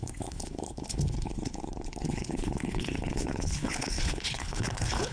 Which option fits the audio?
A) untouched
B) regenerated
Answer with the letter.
B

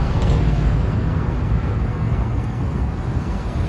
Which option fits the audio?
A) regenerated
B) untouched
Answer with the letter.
A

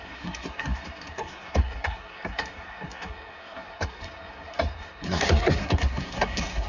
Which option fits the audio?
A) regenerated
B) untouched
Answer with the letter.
A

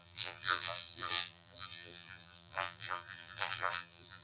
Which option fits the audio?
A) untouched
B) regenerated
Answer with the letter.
B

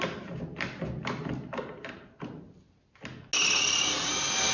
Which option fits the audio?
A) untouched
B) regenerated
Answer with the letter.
A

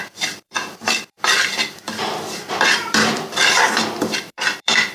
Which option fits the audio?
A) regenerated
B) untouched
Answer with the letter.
A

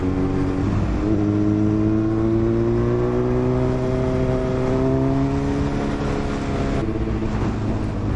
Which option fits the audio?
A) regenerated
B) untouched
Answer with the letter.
B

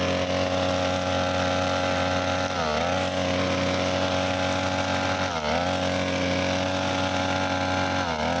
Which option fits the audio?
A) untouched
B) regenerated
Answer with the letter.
A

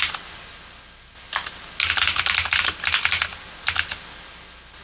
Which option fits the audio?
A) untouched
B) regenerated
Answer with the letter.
A